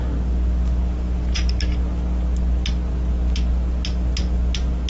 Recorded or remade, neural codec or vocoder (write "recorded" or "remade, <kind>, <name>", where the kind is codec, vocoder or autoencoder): recorded